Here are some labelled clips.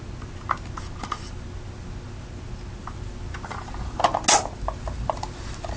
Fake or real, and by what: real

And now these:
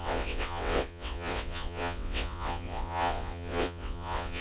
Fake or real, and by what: fake, vocoder, WaveNeXt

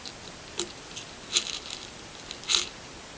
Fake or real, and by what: real